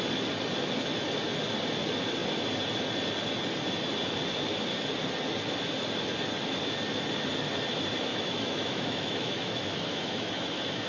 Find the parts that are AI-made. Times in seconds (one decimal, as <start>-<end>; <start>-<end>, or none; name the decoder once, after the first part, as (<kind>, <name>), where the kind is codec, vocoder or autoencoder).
8.1-10.9 (autoencoder, DAC-VAE)